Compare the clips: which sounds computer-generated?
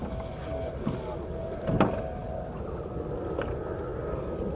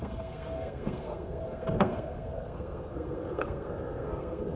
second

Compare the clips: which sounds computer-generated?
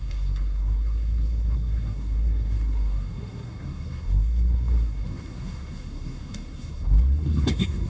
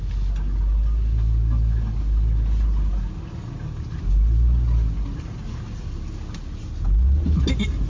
first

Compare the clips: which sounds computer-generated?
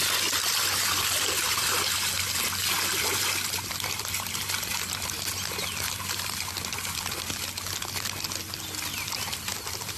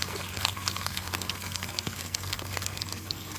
second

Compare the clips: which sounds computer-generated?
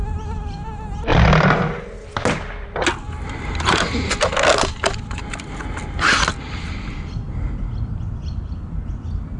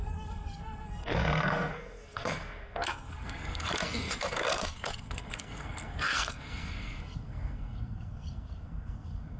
second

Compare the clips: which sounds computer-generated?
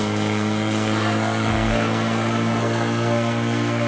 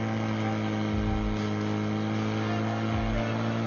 first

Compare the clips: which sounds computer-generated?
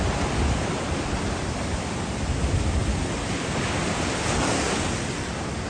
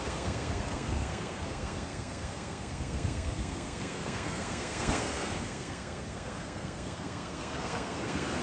second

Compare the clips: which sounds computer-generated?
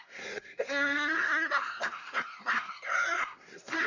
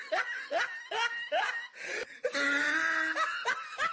first